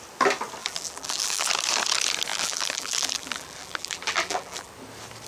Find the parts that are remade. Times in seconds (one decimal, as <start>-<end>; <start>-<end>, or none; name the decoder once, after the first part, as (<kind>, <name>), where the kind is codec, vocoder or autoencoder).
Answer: 0.6-1.5 (vocoder, BigVGAN v2); 2.3-4.7